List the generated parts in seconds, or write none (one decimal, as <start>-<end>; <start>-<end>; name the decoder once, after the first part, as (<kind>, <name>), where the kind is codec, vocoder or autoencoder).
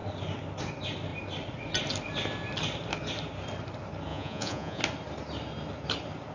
4.1-4.8 (vocoder, Vocos)